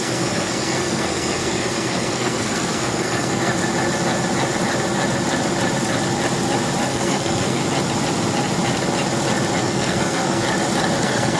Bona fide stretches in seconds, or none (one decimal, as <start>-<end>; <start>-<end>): 3.6-6.8; 7.6-9.6; 10.4-11.0